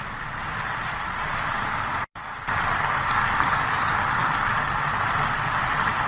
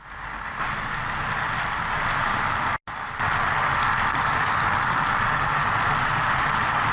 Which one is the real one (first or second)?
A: second